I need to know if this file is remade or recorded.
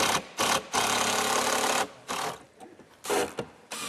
recorded